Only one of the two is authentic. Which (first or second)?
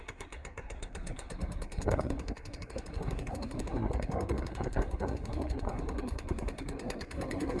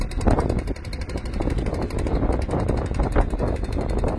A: second